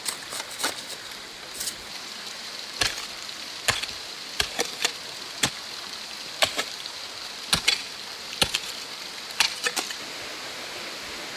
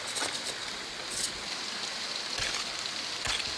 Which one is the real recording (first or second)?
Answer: second